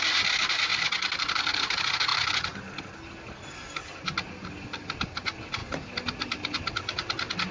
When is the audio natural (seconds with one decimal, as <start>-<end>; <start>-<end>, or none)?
0.0-7.5